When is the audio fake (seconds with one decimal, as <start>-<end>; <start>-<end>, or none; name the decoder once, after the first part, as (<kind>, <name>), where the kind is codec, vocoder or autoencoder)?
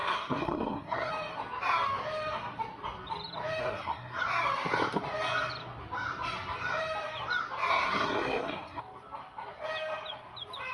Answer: 0.0-1.1 (codec, SNAC); 3.6-4.2; 7.7-8.8